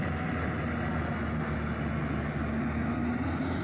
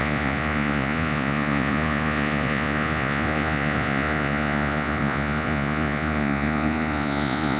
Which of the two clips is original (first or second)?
first